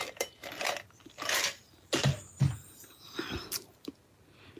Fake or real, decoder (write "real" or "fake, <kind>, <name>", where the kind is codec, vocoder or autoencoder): real